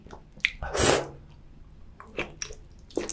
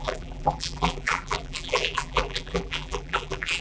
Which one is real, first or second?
first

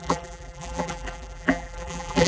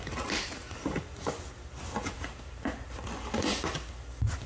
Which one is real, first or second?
second